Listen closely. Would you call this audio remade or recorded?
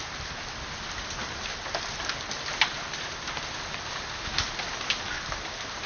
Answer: recorded